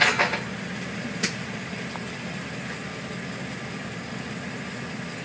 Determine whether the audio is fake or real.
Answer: real